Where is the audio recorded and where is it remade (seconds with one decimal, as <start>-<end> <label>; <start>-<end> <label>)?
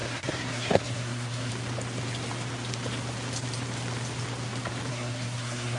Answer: 0.0-1.5 remade; 1.5-4.9 recorded; 4.9-5.8 remade